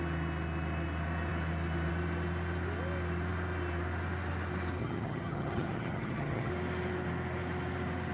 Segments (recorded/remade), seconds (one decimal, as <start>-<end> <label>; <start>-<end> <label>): 0.0-4.8 recorded; 4.8-6.5 remade; 6.5-8.1 recorded